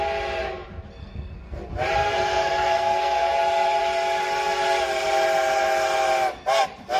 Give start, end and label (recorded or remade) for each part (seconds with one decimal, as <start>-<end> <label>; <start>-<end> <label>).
0.0-1.0 recorded; 1.0-1.6 remade; 1.6-2.0 recorded; 2.0-3.3 remade; 3.3-7.0 recorded